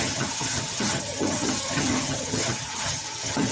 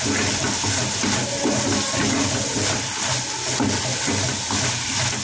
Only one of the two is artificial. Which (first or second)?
first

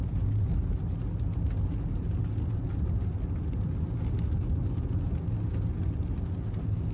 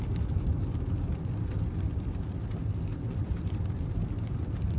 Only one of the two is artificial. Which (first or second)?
second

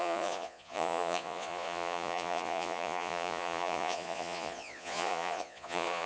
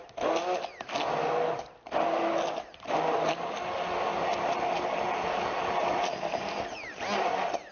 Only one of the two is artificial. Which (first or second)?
first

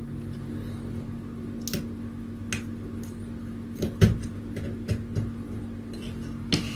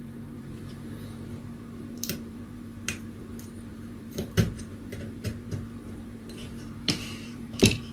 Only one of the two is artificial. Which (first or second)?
second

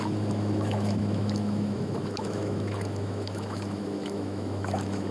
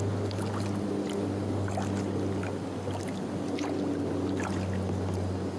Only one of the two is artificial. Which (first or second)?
first